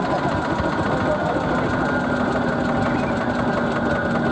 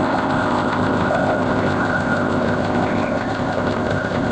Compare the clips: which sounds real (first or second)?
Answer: first